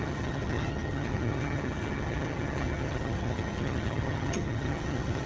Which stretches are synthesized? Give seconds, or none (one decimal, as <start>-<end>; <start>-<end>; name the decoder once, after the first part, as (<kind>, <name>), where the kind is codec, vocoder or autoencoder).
0.0-5.3 (vocoder, HiFi-GAN)